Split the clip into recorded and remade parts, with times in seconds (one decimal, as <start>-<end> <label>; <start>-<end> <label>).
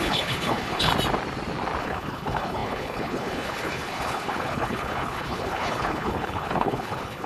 0.0-0.9 remade; 0.9-1.8 recorded; 1.8-7.3 remade